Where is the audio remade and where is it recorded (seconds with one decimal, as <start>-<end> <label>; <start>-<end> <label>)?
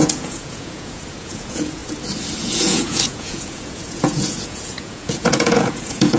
0.0-1.8 remade; 1.8-2.4 recorded; 2.4-6.2 remade